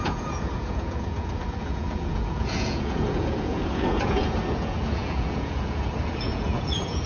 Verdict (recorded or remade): remade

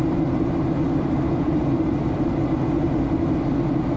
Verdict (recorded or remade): recorded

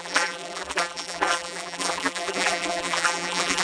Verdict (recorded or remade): remade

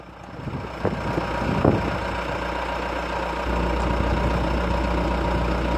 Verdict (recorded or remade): recorded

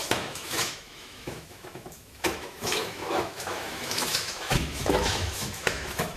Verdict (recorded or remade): remade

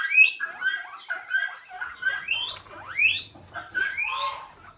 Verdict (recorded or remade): recorded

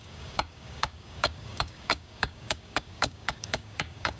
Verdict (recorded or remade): remade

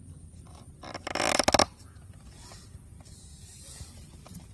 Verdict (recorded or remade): remade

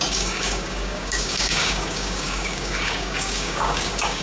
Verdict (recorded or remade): remade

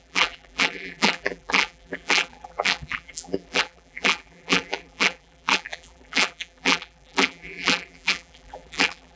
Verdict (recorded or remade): remade